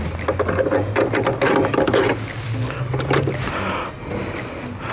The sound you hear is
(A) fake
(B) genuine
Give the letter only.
B